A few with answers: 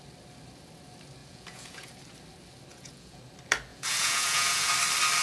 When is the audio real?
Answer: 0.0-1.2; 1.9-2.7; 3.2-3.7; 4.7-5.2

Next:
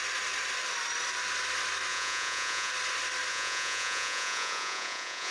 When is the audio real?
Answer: 0.0-1.9; 2.7-3.3

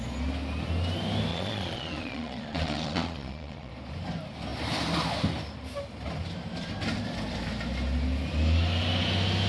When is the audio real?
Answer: 0.0-1.3; 3.7-9.5

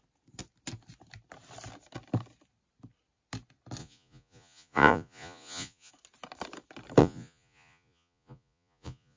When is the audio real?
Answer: 0.0-3.8; 5.9-7.0